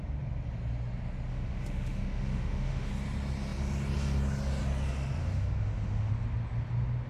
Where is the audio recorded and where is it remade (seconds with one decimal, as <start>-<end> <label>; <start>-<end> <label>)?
0.0-1.3 recorded; 1.3-2.9 remade; 2.9-5.2 recorded; 5.2-6.1 remade; 6.1-7.1 recorded